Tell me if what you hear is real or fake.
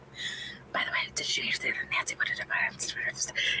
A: real